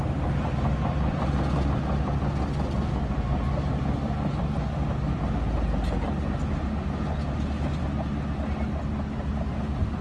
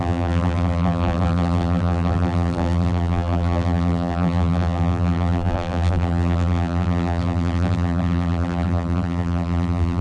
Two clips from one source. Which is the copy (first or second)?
second